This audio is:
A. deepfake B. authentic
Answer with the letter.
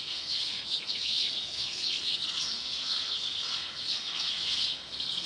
A